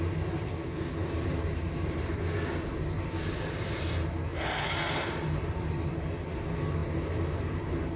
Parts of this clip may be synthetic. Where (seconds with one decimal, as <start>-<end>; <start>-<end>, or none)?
1.0-2.1; 4.3-6.0; 6.8-8.0